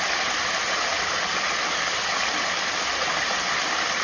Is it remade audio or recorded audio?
recorded